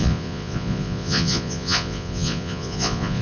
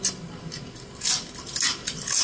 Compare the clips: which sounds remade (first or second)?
first